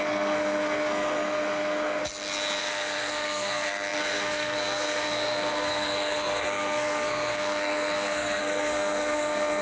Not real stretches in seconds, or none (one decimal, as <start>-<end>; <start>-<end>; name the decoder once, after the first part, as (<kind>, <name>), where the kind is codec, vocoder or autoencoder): 0.0-2.0 (codec, SNAC); 2.6-9.6